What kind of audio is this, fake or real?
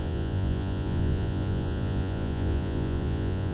fake